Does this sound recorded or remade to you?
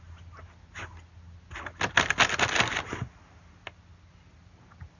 recorded